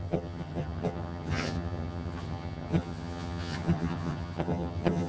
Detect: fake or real fake